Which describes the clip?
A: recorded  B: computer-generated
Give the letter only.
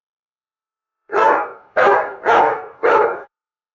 B